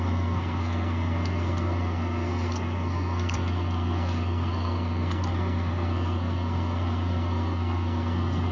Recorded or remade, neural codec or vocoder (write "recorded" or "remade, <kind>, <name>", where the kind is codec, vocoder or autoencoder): remade, codec, SNAC